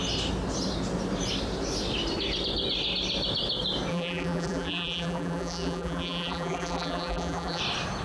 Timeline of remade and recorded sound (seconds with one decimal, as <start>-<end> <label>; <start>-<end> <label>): 0.0-3.9 recorded; 3.9-7.6 remade; 7.6-8.0 recorded